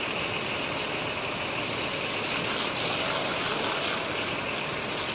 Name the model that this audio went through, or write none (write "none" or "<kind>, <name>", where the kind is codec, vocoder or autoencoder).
none